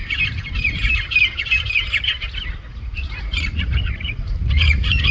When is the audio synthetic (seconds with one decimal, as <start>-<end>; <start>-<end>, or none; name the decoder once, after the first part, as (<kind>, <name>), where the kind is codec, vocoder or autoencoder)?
2.7-5.1 (vocoder, Vocos)